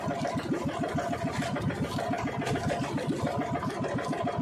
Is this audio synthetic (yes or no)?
no